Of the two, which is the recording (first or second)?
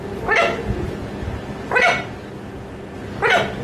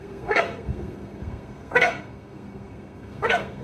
first